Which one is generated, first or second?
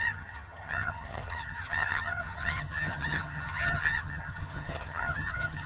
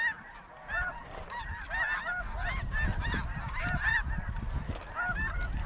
first